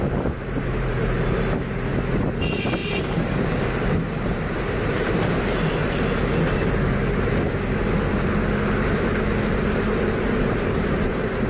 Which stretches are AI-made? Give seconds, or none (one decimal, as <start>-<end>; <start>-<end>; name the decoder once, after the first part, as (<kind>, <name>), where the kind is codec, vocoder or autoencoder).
0.0-1.9 (vocoder, BigVGAN v2); 2.4-5.8; 9.5-11.5